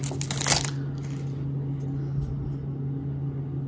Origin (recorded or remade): recorded